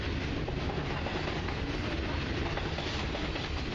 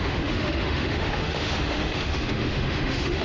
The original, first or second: first